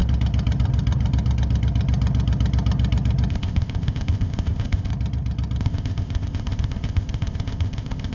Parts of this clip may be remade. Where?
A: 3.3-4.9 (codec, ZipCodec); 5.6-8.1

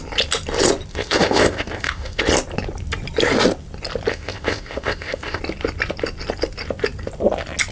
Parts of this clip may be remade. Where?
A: 0.9-2.2 (codec, ZipCodec); 4.1-5.4

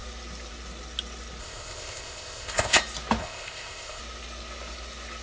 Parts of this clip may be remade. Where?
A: 1.4-2.8 (codec, ZipCodec); 3.2-4.0

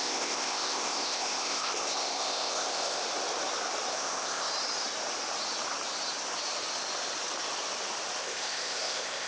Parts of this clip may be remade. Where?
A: 0.0-3.0 (codec, ZipCodec); 3.9-4.5; 8.2-9.3